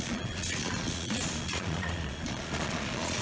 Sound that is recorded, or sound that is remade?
remade